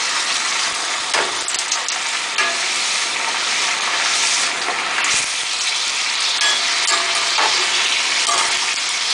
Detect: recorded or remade recorded